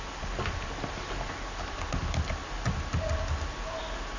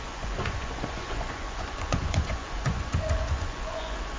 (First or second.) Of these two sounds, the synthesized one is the second